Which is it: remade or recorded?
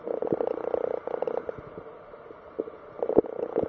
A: recorded